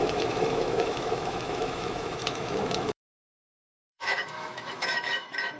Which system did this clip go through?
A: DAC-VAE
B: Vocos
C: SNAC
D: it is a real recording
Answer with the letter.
A